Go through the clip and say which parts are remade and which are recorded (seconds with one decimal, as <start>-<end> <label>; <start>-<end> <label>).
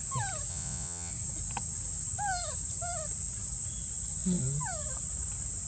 0.0-0.5 recorded; 0.5-1.1 remade; 1.1-5.7 recorded